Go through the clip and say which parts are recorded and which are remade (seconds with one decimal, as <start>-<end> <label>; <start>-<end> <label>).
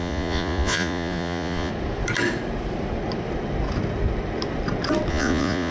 0.0-1.7 remade; 1.7-5.1 recorded; 5.1-5.7 remade